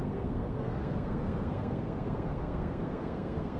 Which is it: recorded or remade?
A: remade